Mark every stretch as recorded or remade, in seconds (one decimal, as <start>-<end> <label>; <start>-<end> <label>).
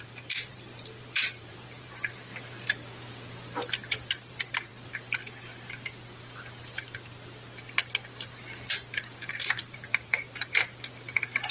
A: 0.0-2.3 remade; 2.3-4.1 recorded; 4.1-4.7 remade; 4.7-9.3 recorded; 9.3-11.5 remade